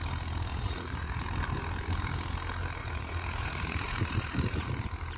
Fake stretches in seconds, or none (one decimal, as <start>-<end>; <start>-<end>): 0.5-1.2; 2.8-4.7